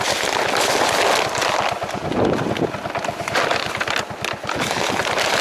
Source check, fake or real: real